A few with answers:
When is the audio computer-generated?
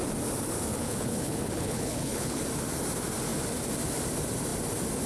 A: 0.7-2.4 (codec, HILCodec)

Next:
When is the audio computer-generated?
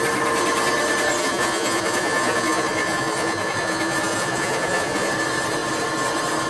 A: 1.2-5.1 (vocoder, Vocos)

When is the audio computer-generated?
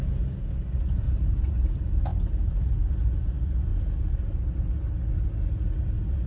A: none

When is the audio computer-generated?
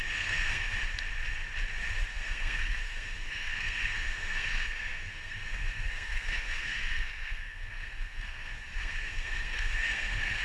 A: 0.0-0.8 (codec, SNAC); 2.1-10.4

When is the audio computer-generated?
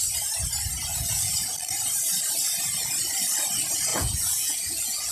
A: 0.9-1.5 (vocoder, Vocos); 3.9-5.1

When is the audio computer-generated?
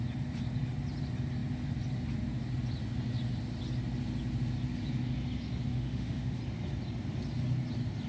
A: 5.7-6.4 (autoencoder, DAC-VAE)